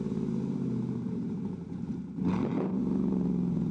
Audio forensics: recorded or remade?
remade